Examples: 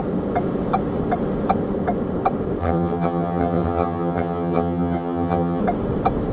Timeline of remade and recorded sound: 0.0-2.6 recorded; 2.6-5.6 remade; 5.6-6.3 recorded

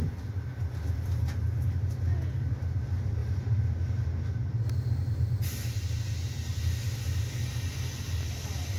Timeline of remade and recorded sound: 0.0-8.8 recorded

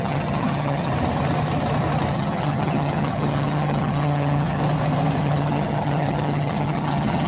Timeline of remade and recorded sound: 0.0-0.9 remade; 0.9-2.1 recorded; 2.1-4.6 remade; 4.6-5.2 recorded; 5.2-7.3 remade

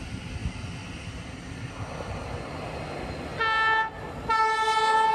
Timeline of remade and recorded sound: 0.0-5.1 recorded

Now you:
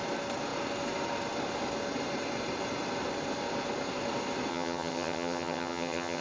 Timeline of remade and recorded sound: 0.0-4.5 recorded; 4.5-6.2 remade